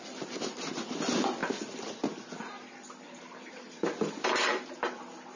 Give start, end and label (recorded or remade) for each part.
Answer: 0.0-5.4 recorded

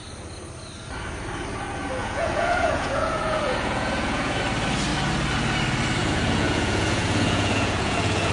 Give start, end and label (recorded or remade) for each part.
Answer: 0.0-2.0 recorded; 2.0-4.4 remade; 4.4-6.0 recorded; 6.0-8.3 remade

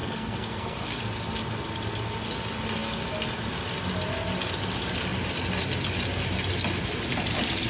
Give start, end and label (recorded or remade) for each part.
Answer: 0.0-1.0 remade; 1.0-7.7 recorded

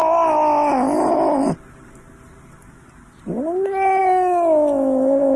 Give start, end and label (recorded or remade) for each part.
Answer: 0.0-4.0 recorded; 4.0-5.4 remade

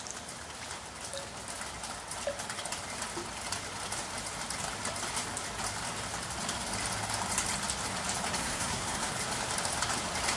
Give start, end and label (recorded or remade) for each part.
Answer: 0.0-8.4 recorded; 8.4-9.1 remade; 9.1-10.4 recorded